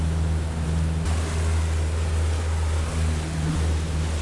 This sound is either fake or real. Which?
real